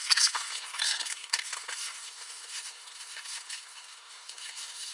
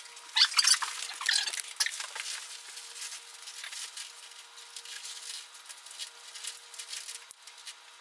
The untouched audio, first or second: second